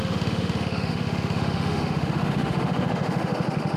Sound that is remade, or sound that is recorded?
remade